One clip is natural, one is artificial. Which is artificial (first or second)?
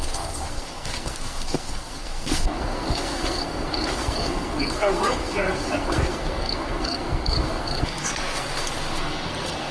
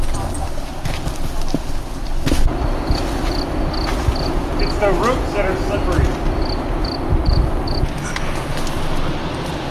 first